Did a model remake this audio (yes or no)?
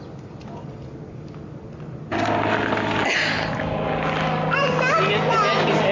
no